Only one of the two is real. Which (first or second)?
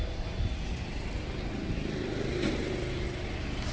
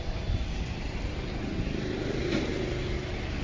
first